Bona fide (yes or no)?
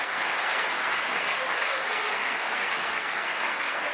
no